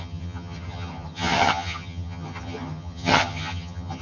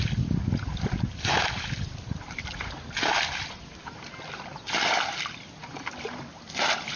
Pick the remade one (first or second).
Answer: first